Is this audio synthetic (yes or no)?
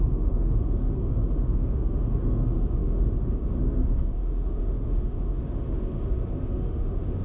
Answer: yes